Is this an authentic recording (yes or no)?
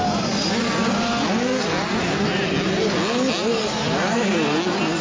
yes